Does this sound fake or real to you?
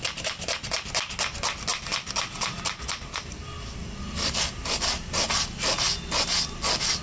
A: real